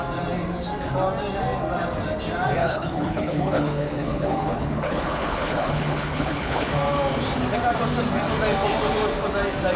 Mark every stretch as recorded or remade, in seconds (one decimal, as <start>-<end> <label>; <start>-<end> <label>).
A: 0.0-2.6 recorded; 2.6-6.7 remade; 6.7-9.8 recorded